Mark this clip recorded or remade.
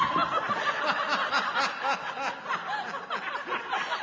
recorded